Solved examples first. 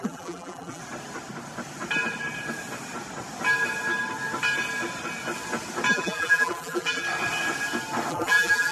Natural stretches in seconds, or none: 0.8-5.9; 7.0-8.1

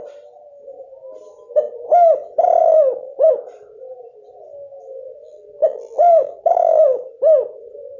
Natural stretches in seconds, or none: 0.0-2.6; 3.3-5.1; 7.1-8.0

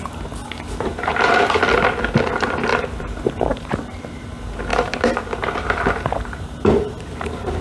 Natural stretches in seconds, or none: 0.0-0.9; 1.6-2.7; 3.8-4.7

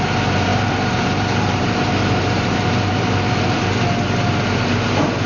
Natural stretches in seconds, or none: 0.0-0.5; 3.1-5.3

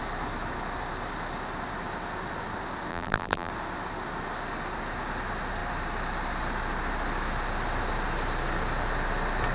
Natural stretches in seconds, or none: 0.0-2.9; 3.5-9.5

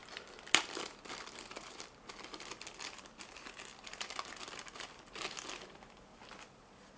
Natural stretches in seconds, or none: 2.4-3.7; 4.3-7.0